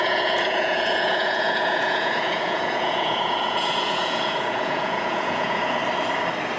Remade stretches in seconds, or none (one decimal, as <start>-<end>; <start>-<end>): 0.0-5.8